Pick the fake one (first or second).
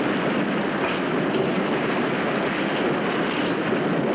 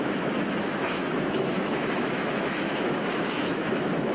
second